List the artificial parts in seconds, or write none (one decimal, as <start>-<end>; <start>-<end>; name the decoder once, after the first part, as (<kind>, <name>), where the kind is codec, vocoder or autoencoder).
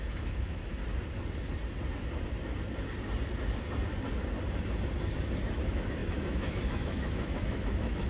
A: 0.0-0.8 (autoencoder, DAC-VAE); 5.5-8.1